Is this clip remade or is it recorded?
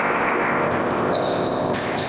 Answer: remade